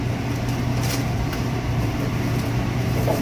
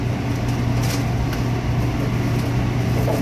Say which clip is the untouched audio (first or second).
second